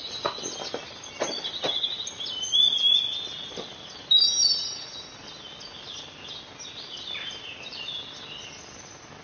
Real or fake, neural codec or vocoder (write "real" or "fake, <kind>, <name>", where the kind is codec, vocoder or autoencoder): real